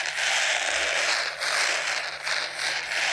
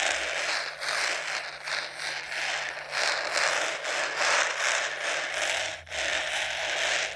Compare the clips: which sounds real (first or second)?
second